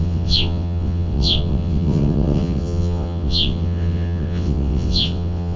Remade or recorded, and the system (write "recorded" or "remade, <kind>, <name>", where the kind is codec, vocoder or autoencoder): remade, vocoder, WaveNeXt